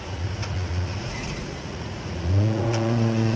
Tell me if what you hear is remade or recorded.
remade